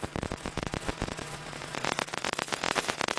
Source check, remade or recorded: remade